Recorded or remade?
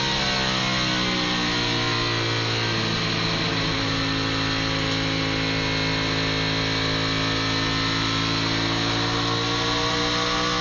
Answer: recorded